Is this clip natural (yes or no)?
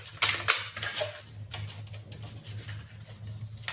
yes